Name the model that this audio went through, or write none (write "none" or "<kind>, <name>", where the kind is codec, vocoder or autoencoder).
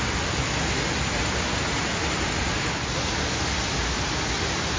none